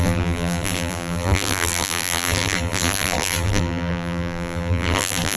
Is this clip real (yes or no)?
no